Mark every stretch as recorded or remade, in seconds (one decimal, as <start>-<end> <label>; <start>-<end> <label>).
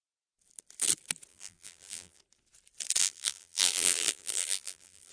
0.0-1.3 recorded; 1.3-2.2 remade; 2.2-3.0 recorded; 3.0-5.1 remade